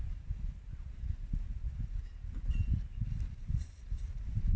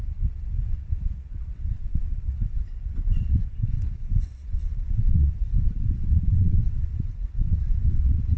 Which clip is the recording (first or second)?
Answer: first